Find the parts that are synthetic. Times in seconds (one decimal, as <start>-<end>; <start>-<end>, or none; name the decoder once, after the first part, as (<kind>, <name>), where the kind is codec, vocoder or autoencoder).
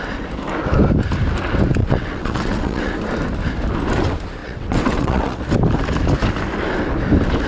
1.8-2.9 (vocoder, WaveNeXt); 4.4-5.4